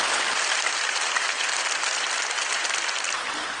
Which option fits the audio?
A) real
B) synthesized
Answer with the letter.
A